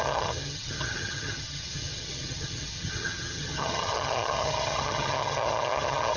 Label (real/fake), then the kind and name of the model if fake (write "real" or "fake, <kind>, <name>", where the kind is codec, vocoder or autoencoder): fake, vocoder, HiFi-GAN